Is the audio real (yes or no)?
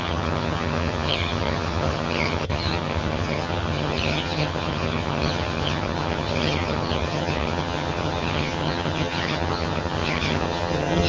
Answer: no